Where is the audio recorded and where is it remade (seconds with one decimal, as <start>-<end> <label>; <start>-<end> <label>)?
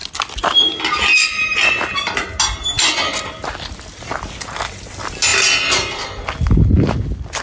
0.0-7.4 recorded